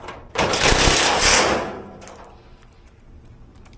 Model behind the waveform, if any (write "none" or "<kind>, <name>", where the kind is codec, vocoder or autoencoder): none